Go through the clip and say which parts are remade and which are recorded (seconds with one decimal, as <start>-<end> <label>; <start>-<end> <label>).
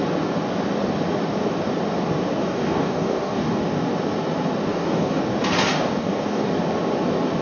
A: 0.0-2.4 recorded; 2.4-3.6 remade; 3.6-4.7 recorded; 4.7-5.2 remade; 5.2-5.7 recorded; 5.7-6.5 remade; 6.5-7.4 recorded